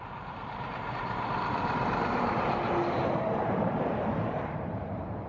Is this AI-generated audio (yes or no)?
yes